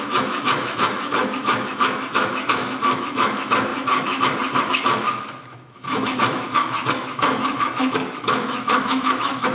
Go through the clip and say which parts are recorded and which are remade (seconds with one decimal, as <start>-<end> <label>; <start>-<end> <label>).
0.0-9.5 remade